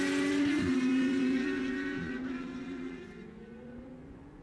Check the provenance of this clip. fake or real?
fake